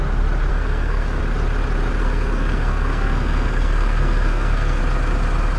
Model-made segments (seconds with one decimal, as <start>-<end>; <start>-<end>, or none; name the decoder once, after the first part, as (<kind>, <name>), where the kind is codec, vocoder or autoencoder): 0.5-1.2 (codec, SNAC); 2.0-4.8